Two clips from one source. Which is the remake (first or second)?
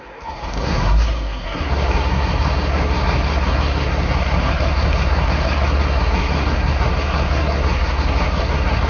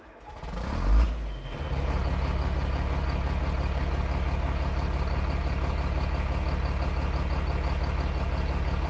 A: first